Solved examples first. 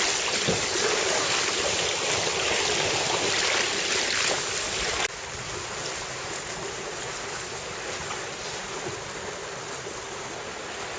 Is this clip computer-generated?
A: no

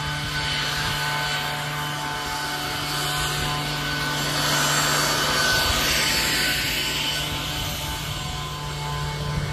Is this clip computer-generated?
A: no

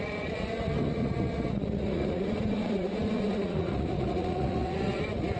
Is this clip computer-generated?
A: yes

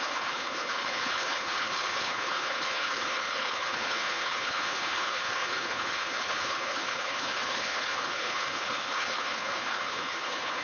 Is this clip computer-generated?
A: yes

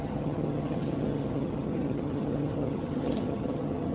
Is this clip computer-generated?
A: yes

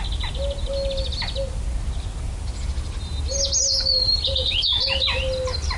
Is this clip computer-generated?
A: no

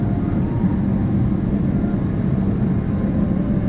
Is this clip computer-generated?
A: no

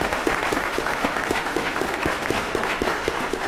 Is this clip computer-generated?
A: yes